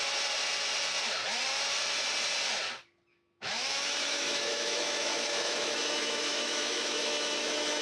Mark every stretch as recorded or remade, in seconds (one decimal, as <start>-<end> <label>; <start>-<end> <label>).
0.0-3.1 recorded; 3.1-7.8 remade